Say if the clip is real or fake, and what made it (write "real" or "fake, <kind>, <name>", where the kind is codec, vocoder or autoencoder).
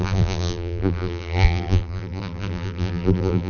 fake, vocoder, BigVGAN v2